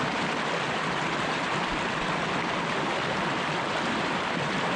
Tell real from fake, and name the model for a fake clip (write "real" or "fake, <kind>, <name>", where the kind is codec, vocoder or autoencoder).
real